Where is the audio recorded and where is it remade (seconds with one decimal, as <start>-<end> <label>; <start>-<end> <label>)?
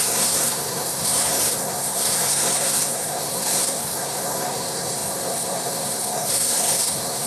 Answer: 0.0-7.3 remade